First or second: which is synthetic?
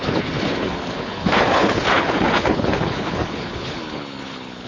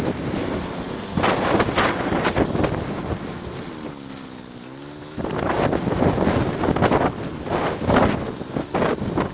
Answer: first